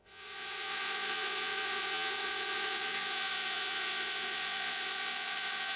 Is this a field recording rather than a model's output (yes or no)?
no